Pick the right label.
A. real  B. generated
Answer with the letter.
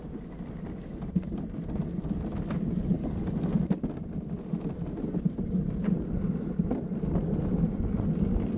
A